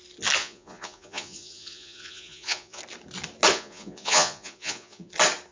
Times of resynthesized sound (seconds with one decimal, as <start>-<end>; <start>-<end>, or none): 0.4-2.8; 3.5-5.1